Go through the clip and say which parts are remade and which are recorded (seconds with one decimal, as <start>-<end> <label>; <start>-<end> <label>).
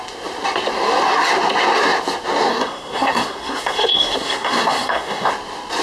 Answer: 0.0-2.5 recorded; 2.5-5.3 remade; 5.3-5.8 recorded